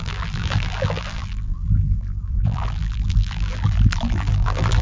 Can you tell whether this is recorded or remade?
remade